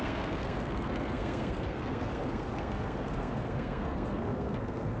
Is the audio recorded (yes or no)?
no